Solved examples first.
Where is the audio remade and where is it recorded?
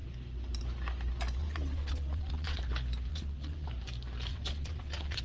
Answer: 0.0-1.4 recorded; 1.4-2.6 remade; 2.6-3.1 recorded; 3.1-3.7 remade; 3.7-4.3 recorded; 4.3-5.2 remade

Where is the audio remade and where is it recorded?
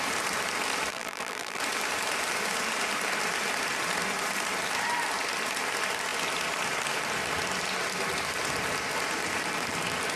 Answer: 0.0-0.9 recorded; 0.9-1.6 remade; 1.6-10.2 recorded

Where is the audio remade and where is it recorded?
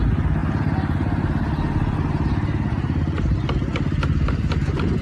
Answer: 0.0-5.0 recorded